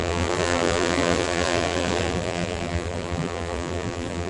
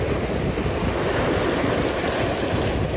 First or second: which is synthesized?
first